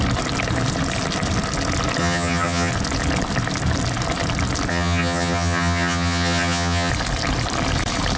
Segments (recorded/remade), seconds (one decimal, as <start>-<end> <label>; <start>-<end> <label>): 0.0-2.0 recorded; 2.0-2.7 remade; 2.7-4.7 recorded; 4.7-6.9 remade; 6.9-8.2 recorded

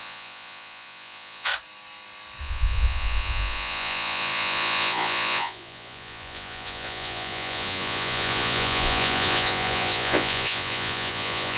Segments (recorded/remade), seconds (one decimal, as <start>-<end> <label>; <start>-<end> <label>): 0.0-1.5 remade; 1.5-2.4 recorded; 2.4-11.6 remade

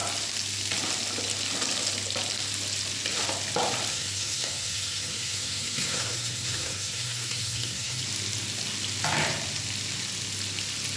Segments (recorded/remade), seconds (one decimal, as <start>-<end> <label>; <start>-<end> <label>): 0.0-3.9 recorded; 3.9-8.0 remade; 8.0-11.0 recorded

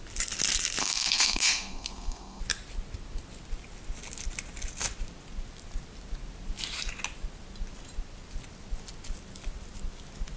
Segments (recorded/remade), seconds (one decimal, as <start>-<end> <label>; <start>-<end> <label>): 0.0-0.8 recorded; 0.8-2.4 remade; 2.4-10.4 recorded

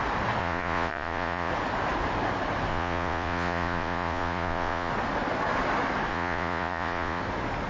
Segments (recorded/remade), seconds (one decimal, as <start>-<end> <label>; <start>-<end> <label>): 0.0-0.4 recorded; 0.4-1.5 remade; 1.5-2.7 recorded; 2.7-4.9 remade; 4.9-6.1 recorded; 6.1-7.2 remade; 7.2-7.7 recorded